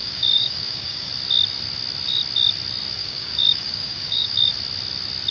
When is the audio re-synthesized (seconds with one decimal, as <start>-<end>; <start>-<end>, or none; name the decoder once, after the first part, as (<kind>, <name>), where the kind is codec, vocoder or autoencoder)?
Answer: 0.0-1.1 (codec, DAC); 3.0-4.5